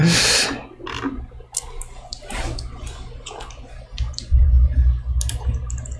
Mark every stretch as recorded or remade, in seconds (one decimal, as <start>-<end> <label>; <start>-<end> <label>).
0.0-6.0 recorded